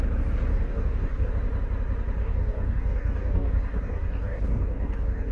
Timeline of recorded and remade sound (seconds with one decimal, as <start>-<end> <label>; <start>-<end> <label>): 0.0-0.5 recorded; 0.5-1.3 remade; 1.3-2.2 recorded; 2.2-5.3 remade